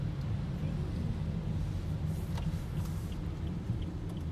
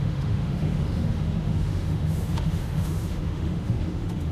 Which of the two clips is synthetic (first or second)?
second